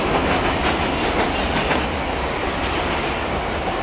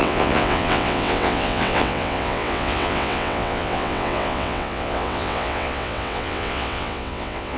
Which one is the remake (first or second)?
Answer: second